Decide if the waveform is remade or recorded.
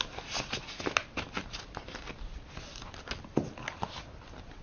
recorded